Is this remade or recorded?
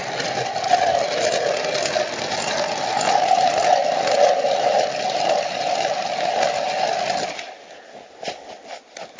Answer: recorded